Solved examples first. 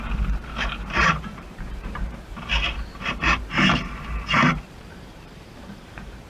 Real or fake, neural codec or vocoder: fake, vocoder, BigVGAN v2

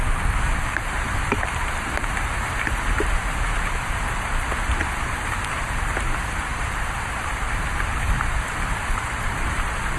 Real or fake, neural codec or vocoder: fake, vocoder, BigVGAN v2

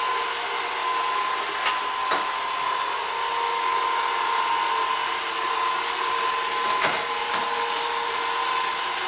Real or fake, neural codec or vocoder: real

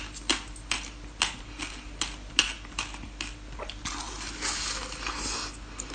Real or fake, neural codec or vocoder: real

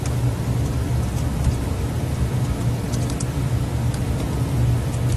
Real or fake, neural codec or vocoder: real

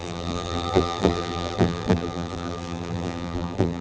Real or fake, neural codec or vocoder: fake, vocoder, BigVGAN v2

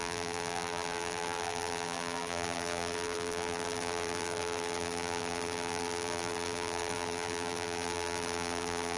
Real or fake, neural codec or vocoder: fake, vocoder, BigVGAN v2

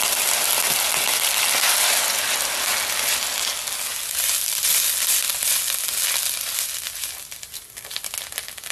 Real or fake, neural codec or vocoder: real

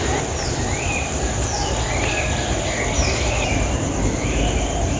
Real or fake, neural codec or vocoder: real